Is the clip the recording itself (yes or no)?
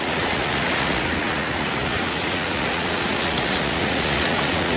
no